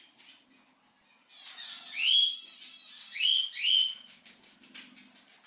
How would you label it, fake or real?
real